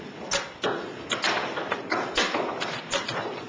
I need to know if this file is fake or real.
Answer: real